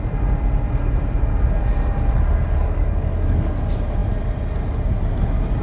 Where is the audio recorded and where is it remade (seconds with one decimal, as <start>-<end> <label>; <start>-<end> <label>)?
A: 0.0-2.6 recorded; 2.6-3.6 remade; 3.6-5.6 recorded